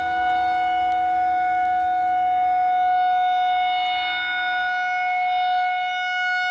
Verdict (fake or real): real